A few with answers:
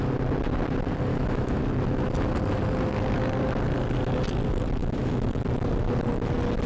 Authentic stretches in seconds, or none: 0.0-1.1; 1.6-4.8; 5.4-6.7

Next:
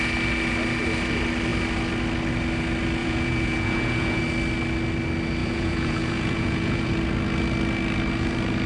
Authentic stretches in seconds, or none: 0.0-3.0; 4.2-5.4; 6.9-8.7

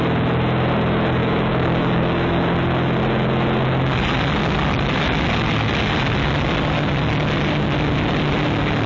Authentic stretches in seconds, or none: 0.0-1.2; 2.4-8.9

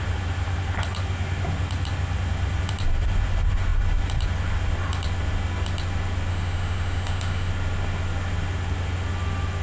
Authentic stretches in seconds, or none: 0.0-6.3; 7.5-9.6

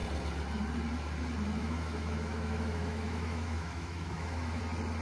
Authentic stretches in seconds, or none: 0.0-1.6; 4.6-5.0

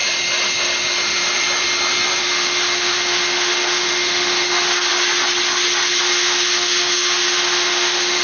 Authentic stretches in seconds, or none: 0.0-2.2; 4.9-6.0

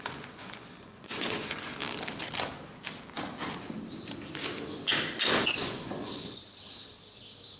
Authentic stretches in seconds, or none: 1.7-5.4; 6.4-7.6